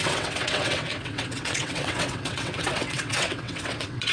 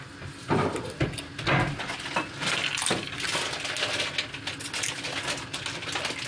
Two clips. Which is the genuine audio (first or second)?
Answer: second